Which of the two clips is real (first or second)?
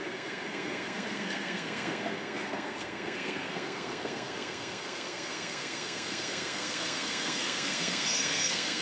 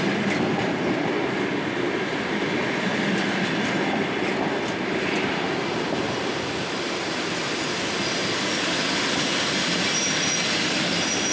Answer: second